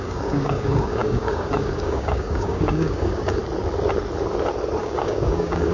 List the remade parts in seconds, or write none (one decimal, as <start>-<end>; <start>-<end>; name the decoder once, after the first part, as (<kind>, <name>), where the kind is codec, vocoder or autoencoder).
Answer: 0.0-3.4 (codec, DAC); 4.8-5.7